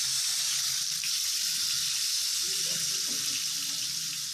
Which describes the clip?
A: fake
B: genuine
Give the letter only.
B